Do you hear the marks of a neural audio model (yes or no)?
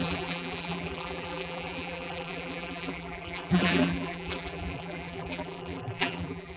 yes